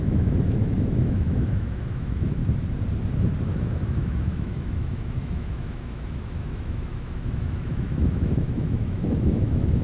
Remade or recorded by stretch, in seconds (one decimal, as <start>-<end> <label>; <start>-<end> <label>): 0.0-2.4 remade; 2.4-3.5 recorded; 3.5-9.8 remade